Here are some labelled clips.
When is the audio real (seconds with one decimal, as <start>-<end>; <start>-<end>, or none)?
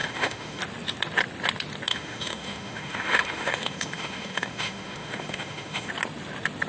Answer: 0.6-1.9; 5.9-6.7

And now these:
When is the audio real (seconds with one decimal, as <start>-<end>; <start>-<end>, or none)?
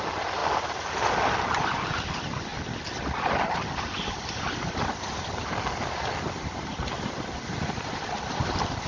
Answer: 0.0-8.9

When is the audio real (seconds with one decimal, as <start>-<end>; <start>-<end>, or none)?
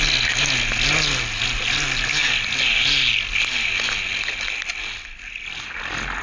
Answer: 0.0-6.2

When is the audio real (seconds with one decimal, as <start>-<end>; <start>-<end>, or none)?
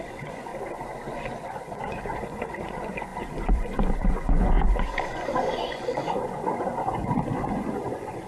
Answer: 0.5-1.1